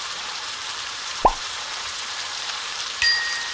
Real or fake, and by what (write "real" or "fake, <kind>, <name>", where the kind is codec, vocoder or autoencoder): fake, vocoder, BigVGAN v2